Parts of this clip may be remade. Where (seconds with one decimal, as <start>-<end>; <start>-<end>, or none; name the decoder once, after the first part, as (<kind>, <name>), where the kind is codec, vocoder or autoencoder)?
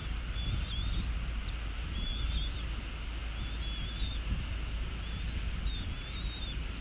0.0-2.1 (vocoder, BigVGAN v2)